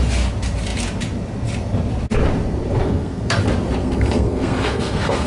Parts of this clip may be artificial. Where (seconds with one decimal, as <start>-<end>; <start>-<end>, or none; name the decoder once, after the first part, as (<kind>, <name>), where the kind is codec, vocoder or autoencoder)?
2.8-3.4 (codec, SNAC); 3.8-5.3